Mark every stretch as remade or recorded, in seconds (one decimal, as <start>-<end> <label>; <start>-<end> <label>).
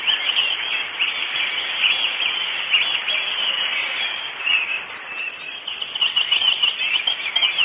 0.0-7.6 recorded